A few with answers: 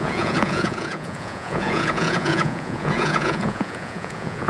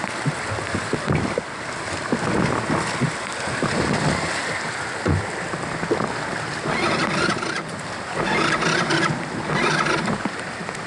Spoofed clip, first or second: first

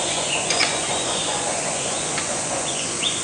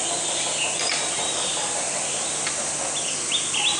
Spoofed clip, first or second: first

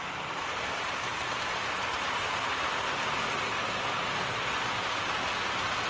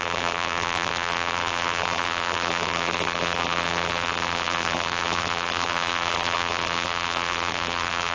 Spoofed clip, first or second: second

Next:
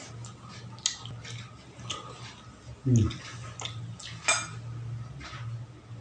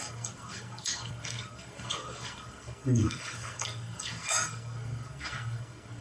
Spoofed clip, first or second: second